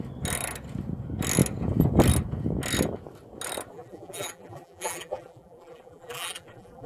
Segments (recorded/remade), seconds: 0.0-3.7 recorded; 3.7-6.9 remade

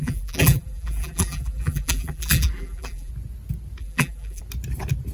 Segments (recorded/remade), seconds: 0.0-3.1 remade; 3.1-3.8 recorded; 3.8-4.4 remade; 4.4-5.1 recorded

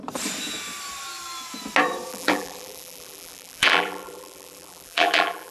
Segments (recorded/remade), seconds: 0.0-2.1 recorded; 2.1-5.5 remade